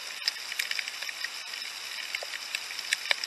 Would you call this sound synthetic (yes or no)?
no